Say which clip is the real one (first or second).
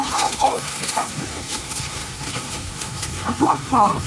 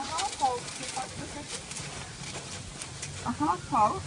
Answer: second